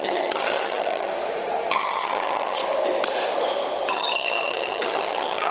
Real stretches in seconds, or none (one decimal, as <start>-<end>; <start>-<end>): 1.1-1.7; 2.6-3.9